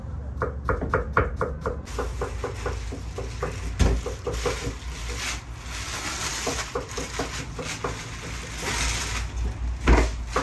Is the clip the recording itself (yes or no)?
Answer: yes